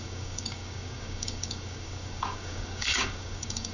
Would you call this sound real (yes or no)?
no